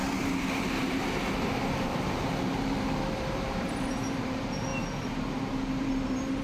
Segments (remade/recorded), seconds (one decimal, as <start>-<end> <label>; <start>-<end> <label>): 0.0-4.7 remade; 4.7-5.3 recorded; 5.3-6.4 remade